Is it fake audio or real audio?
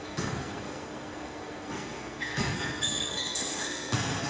fake